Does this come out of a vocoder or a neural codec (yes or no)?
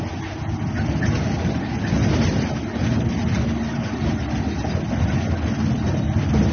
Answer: no